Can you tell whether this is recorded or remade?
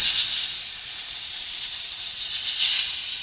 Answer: recorded